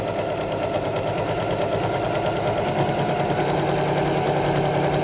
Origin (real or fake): real